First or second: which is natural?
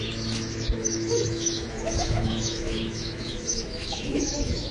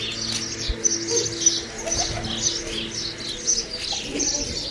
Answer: second